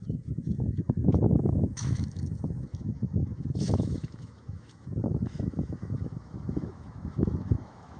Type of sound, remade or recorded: remade